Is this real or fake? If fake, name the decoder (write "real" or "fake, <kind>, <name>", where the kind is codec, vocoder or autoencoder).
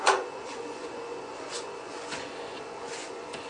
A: fake, vocoder, Vocos